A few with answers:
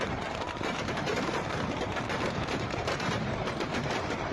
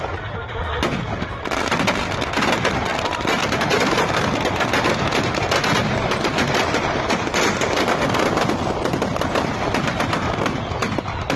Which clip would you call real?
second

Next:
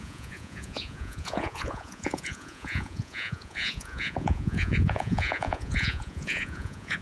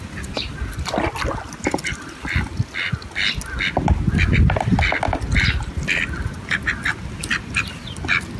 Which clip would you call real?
second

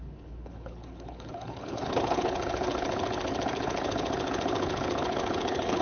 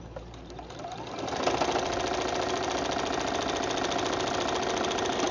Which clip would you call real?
second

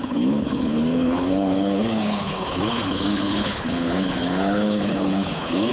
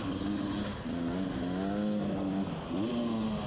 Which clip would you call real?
second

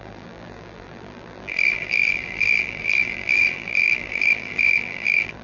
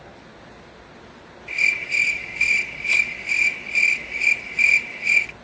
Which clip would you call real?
second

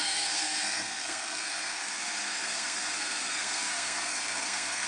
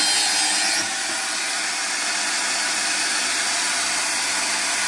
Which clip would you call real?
second